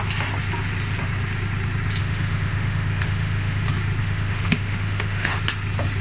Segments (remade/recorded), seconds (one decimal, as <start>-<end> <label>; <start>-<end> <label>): 0.0-2.0 recorded; 2.0-3.6 remade; 3.6-4.0 recorded; 4.0-5.3 remade; 5.3-6.0 recorded